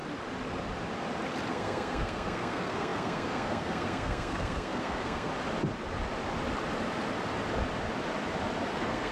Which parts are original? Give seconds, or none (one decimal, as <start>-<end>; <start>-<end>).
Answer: 0.0-1.5; 5.3-8.7